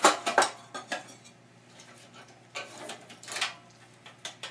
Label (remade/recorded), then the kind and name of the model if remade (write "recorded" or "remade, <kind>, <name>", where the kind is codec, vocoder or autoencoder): recorded